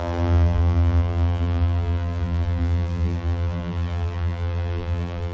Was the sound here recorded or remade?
remade